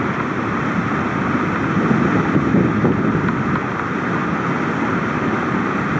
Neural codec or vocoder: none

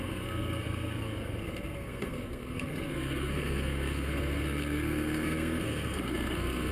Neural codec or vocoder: codec, SNAC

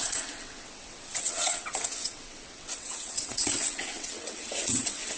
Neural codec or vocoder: vocoder, WaveNeXt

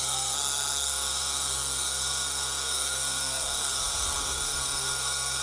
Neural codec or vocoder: codec, SNAC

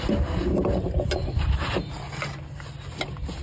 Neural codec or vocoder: none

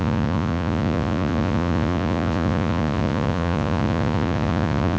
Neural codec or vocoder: vocoder, Vocos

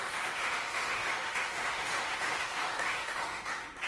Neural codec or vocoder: autoencoder, DAC-VAE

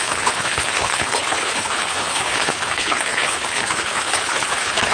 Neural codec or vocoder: codec, HILCodec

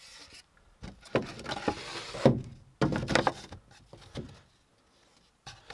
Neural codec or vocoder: none